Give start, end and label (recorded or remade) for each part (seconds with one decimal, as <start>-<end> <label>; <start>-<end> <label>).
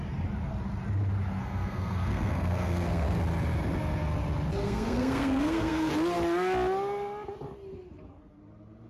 0.0-1.4 recorded; 1.4-3.2 remade; 3.2-4.6 recorded; 4.6-5.9 remade; 5.9-8.9 recorded